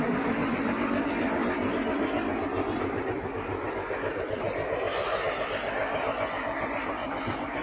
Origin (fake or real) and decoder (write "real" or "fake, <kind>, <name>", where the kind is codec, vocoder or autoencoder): real